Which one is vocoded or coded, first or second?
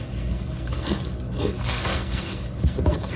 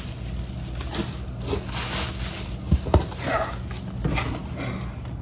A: first